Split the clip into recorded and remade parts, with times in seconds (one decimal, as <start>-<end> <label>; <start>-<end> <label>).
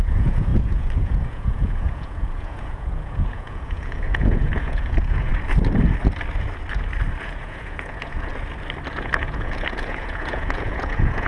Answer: 0.0-5.3 remade; 5.3-7.2 recorded; 7.2-8.3 remade; 8.3-8.9 recorded; 8.9-11.3 remade